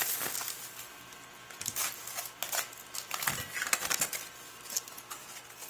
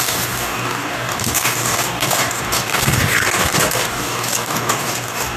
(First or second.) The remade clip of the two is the second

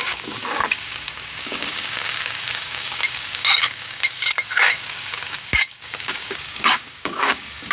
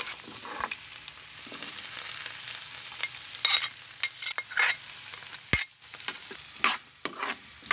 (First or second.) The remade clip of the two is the first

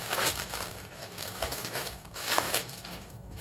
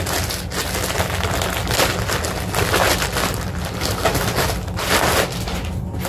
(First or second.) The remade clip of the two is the first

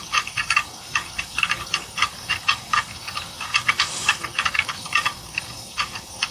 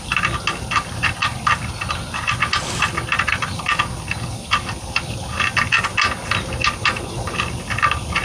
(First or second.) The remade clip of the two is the first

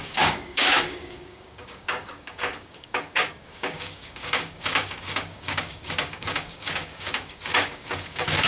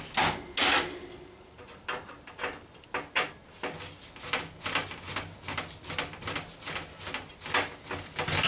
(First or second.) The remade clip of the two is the first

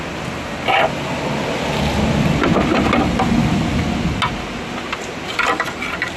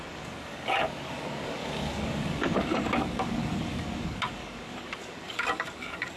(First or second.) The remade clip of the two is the second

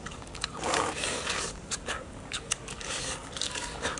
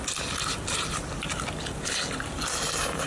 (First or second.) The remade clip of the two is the first